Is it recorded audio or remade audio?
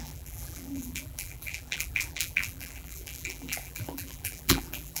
remade